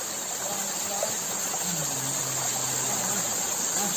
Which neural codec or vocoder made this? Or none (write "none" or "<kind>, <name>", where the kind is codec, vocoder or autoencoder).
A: none